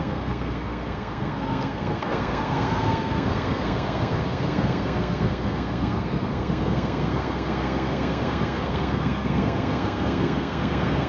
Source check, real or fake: fake